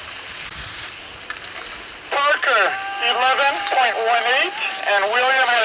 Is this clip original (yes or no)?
yes